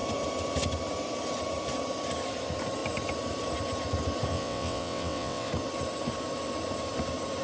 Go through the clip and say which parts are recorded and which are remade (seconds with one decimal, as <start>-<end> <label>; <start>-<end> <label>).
0.0-4.3 recorded; 4.3-5.5 remade; 5.5-7.4 recorded